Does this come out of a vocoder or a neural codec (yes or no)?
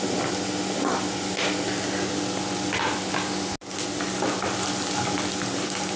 no